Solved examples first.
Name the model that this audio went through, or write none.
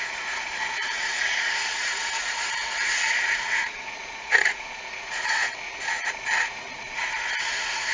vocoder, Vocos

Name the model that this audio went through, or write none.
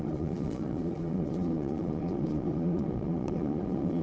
vocoder, Vocos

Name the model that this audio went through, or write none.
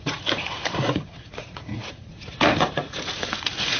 vocoder, Vocos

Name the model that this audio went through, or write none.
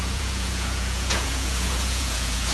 vocoder, Vocos